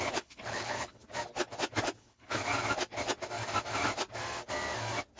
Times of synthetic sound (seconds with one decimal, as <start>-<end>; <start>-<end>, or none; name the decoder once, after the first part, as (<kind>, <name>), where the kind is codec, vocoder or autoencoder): 0.0-1.0 (codec, HILCodec); 2.0-2.4